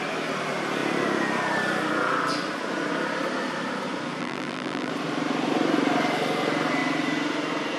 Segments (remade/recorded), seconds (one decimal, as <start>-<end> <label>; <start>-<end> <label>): 0.0-4.2 recorded; 4.2-4.9 remade; 4.9-7.8 recorded